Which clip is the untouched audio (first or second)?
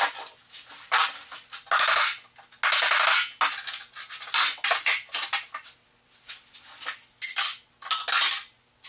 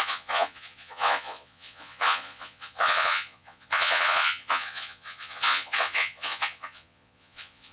first